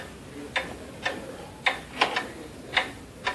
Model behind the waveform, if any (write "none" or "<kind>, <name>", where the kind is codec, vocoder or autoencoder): none